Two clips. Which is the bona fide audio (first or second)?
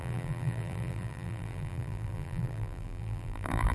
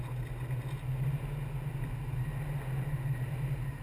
second